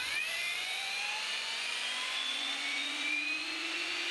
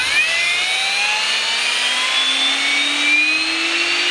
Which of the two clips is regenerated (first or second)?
first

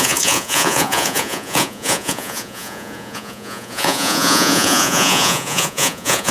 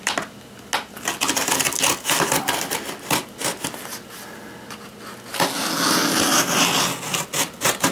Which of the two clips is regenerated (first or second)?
first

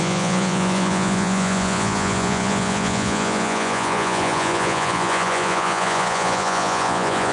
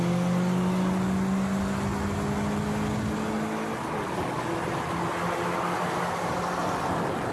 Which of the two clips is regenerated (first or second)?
first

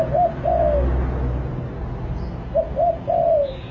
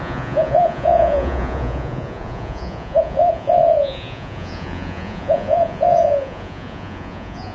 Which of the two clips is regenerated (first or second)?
second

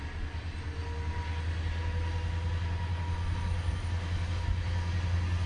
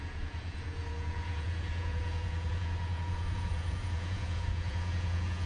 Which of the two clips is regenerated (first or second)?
second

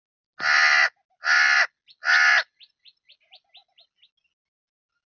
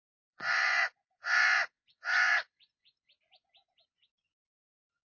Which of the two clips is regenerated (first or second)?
second